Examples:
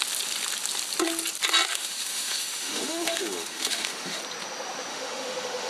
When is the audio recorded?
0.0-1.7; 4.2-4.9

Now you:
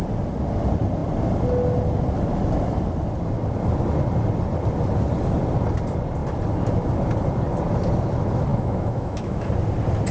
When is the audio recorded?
0.0-8.5; 9.5-10.1